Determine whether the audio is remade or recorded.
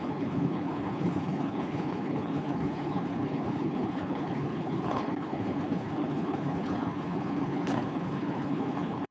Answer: remade